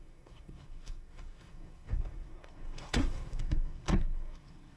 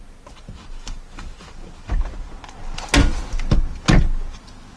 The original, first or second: second